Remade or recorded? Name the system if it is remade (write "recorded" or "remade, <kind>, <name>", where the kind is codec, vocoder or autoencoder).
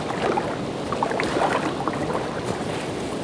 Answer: recorded